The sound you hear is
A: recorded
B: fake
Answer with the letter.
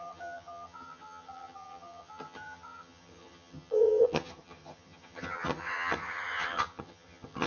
B